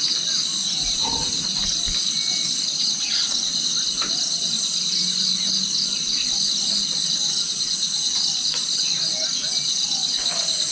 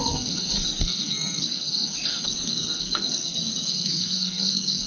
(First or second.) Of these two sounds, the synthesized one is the second